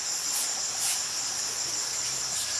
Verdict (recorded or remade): recorded